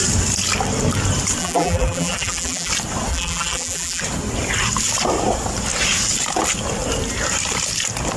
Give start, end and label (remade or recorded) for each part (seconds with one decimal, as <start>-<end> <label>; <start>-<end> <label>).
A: 0.0-1.4 recorded; 1.4-2.7 remade; 2.7-3.1 recorded; 3.1-4.0 remade; 4.0-8.2 recorded